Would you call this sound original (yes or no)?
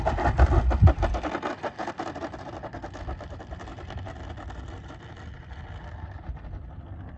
yes